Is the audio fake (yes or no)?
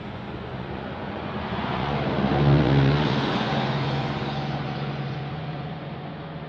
yes